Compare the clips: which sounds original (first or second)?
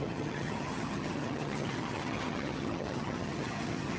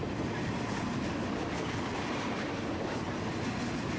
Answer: second